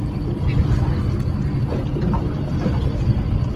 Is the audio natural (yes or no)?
yes